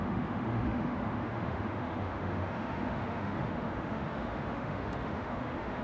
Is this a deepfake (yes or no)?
yes